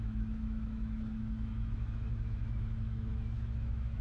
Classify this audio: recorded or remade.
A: remade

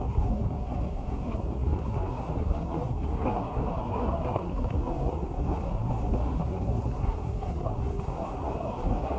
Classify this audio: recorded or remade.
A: remade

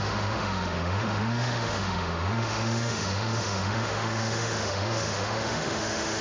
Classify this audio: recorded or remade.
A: remade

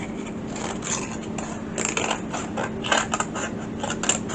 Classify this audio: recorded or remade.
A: recorded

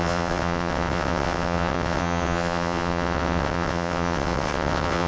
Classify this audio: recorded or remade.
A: remade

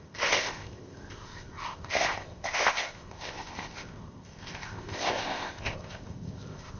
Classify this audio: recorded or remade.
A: remade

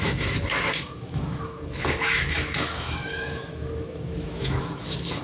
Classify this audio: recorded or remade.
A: remade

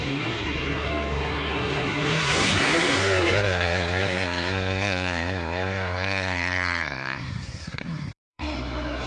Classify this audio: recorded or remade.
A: remade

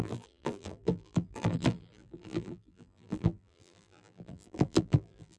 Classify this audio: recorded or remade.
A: remade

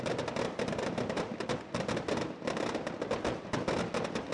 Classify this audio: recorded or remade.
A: recorded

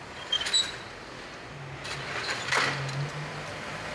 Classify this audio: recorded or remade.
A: recorded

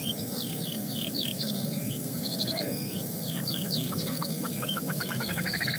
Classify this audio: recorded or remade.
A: remade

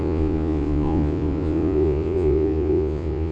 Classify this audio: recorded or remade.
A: remade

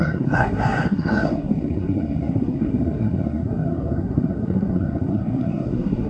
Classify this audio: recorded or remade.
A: remade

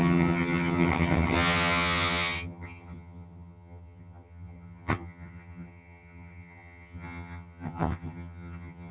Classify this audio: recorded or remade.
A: remade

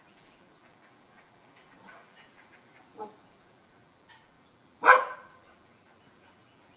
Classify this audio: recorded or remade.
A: remade